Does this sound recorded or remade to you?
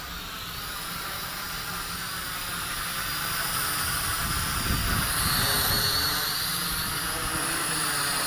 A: recorded